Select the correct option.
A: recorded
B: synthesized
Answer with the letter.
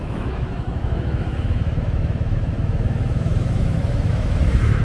B